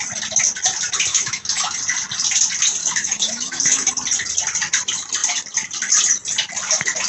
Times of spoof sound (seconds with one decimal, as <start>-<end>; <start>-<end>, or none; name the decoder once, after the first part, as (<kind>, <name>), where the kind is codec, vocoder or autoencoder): 1.1-1.7 (autoencoder, DAC-VAE); 2.8-3.9